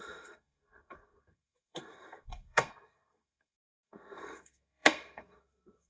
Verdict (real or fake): fake